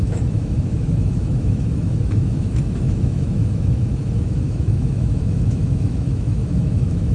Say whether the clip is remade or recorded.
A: remade